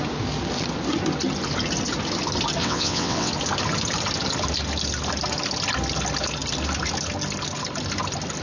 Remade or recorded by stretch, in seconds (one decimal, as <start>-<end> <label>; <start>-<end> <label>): 0.0-2.6 recorded; 2.6-3.3 remade; 3.3-8.4 recorded